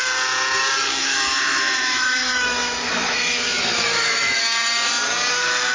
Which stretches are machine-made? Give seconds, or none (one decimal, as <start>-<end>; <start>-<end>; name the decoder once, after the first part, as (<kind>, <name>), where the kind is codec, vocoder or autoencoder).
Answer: 1.0-4.4 (autoencoder, DAC-VAE)